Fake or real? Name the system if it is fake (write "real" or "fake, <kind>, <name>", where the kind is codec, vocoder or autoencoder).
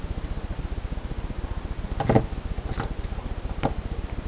real